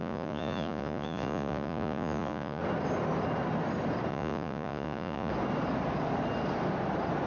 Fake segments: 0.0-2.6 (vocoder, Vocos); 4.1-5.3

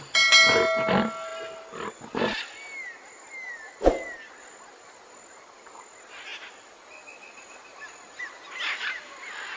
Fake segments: none

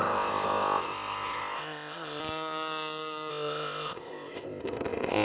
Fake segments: 0.0-2.2 (codec, ZipCodec); 3.3-5.2

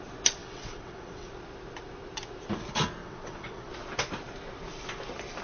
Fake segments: 0.4-1.3 (vocoder, WaveNeXt); 3.0-3.7

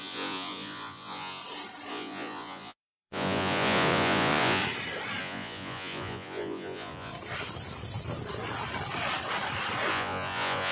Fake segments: 0.0-1.4 (vocoder, Vocos); 1.9-4.6; 5.2-7.1; 9.9-10.7